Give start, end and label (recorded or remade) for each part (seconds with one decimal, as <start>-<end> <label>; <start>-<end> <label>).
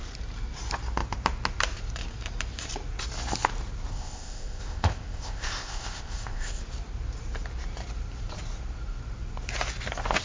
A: 0.0-3.9 recorded; 3.9-6.6 remade; 6.6-10.2 recorded